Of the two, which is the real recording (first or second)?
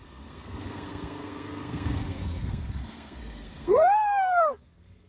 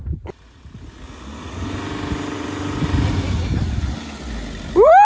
second